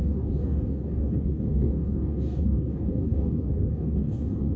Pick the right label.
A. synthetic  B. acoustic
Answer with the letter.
A